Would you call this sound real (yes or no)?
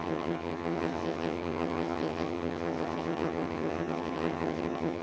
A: no